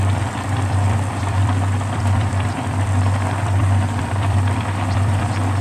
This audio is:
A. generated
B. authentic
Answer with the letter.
A